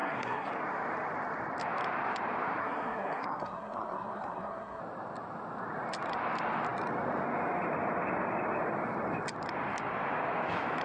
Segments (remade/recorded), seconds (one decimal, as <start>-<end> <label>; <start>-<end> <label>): 0.0-0.5 remade; 0.5-2.6 recorded; 2.6-4.8 remade; 4.8-10.8 recorded